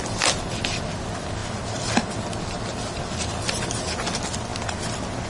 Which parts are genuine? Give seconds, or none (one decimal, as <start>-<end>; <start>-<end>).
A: 1.4-2.2; 4.5-5.3